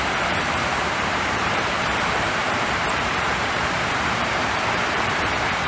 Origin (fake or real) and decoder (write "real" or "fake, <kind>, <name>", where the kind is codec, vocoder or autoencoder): fake, vocoder, BigVGAN v2